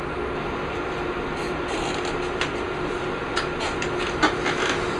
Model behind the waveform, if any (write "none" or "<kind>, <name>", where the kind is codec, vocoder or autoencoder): none